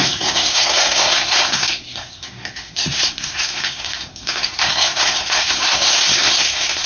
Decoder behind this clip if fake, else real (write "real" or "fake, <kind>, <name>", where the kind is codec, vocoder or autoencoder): fake, codec, SNAC